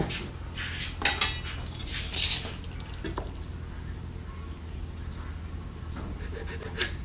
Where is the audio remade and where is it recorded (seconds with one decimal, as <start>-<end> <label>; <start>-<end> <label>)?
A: 0.0-7.0 recorded